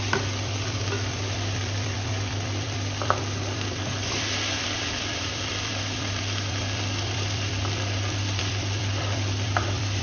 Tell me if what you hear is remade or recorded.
remade